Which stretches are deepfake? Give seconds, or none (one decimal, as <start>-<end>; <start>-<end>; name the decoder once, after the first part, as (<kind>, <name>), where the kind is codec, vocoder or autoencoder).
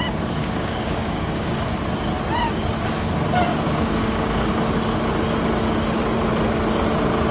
0.4-1.6 (codec, DAC); 3.5-4.5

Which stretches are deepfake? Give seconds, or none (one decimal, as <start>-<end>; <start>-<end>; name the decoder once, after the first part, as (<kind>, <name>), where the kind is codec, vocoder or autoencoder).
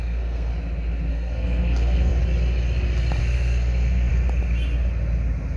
0.0-0.5 (codec, SNAC); 1.1-2.1; 3.2-4.1